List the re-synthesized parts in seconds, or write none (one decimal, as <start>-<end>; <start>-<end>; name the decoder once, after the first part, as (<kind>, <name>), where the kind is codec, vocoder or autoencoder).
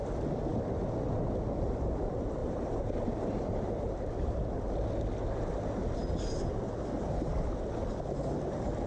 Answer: 2.4-3.7 (vocoder, BigVGAN v2)